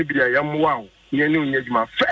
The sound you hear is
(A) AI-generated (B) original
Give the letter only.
B